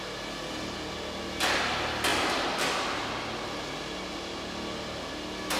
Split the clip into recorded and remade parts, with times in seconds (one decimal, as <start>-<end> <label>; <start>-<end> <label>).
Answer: 0.0-5.6 recorded